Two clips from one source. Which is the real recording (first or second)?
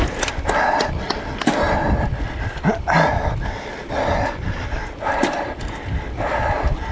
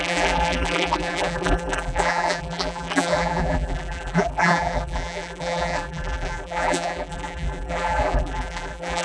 first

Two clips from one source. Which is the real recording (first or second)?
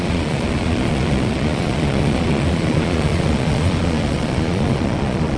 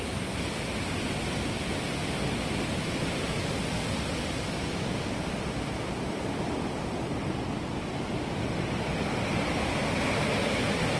second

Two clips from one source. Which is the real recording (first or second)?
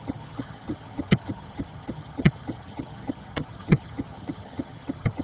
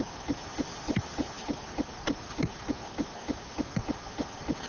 second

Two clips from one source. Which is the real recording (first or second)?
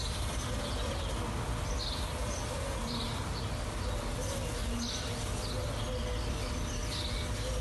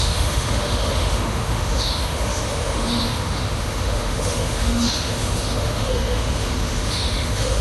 first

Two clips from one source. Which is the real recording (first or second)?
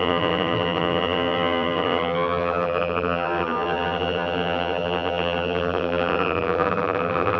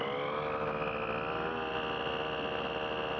second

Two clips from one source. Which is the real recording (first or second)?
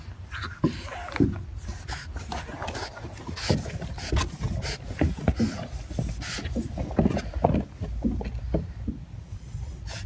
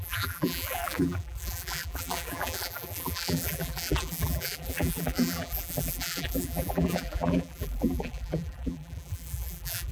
first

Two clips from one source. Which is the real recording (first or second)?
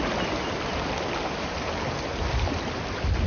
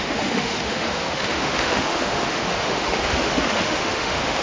first